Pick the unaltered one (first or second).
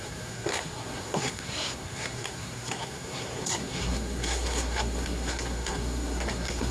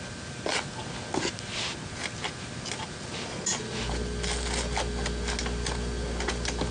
second